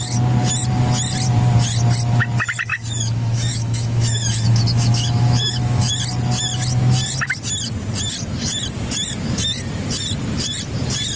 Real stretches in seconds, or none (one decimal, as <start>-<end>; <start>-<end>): 0.0-2.7; 5.9-11.2